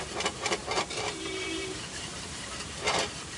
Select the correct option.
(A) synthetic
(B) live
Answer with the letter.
A